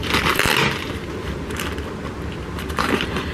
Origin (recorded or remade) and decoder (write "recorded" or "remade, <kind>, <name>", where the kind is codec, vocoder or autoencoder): recorded